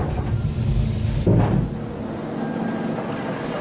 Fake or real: real